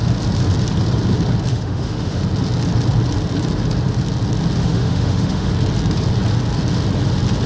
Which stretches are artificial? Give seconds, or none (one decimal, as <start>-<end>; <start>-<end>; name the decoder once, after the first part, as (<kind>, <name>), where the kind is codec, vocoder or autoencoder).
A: 1.5-2.2 (autoencoder, DAC-VAE); 4.6-5.5